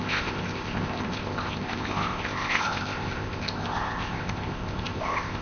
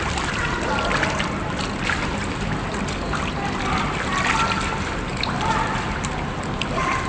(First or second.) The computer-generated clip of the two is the first